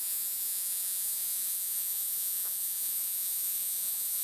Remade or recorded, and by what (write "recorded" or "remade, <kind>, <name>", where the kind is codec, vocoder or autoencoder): remade, vocoder, Vocos